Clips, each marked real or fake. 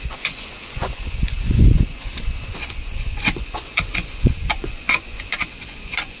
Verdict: fake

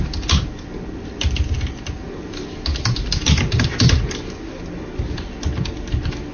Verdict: real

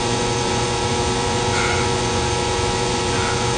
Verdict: fake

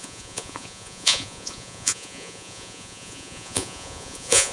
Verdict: fake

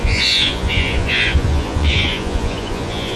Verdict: fake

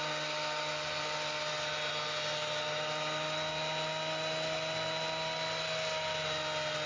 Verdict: real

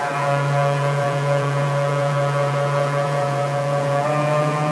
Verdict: fake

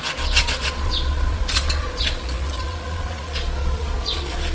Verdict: fake